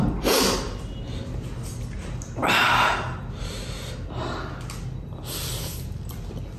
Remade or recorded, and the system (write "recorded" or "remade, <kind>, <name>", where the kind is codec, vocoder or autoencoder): recorded